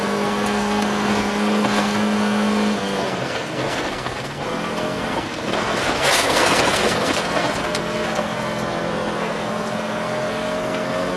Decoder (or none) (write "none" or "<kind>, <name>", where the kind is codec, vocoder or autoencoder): codec, SNAC